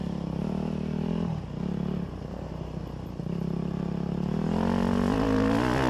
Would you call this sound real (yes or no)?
yes